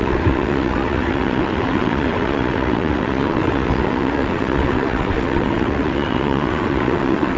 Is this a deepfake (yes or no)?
yes